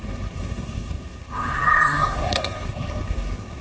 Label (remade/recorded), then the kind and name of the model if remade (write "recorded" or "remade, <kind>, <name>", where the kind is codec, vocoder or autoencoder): remade, codec, SNAC